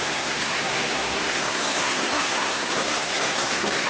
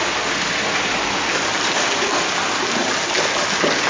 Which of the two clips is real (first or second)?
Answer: second